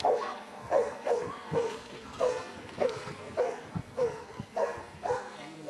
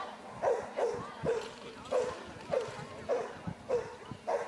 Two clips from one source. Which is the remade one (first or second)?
first